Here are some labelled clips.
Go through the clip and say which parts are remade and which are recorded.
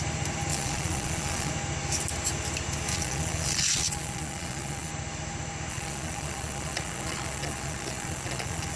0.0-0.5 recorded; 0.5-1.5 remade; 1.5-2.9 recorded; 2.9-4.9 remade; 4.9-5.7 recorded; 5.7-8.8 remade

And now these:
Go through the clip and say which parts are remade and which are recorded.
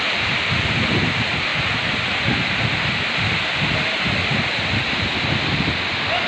0.0-6.3 recorded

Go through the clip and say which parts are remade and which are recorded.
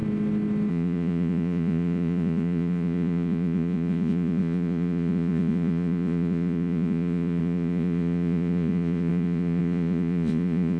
0.0-0.7 recorded; 0.7-10.8 remade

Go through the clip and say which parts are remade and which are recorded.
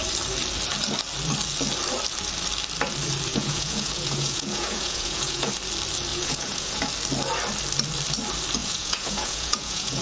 0.0-3.3 recorded; 3.3-5.5 remade; 5.5-6.1 recorded; 6.1-6.9 remade; 6.9-8.6 recorded; 8.6-10.0 remade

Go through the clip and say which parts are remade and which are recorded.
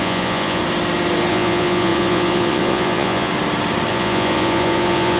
0.0-0.6 remade; 0.6-1.3 recorded; 1.3-3.3 remade; 3.3-3.9 recorded; 3.9-5.2 remade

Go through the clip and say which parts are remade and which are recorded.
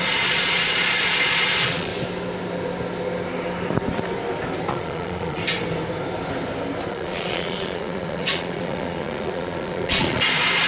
0.0-1.9 remade; 1.9-4.7 recorded; 4.7-5.4 remade; 5.4-6.9 recorded; 6.9-10.7 remade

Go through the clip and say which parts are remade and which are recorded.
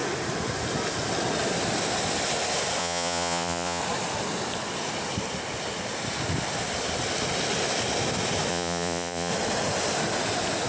0.0-2.8 recorded; 2.8-3.8 remade; 3.8-8.5 recorded; 8.5-9.3 remade; 9.3-10.7 recorded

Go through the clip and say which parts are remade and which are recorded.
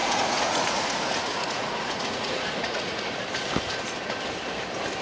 0.0-3.0 remade; 3.0-5.0 recorded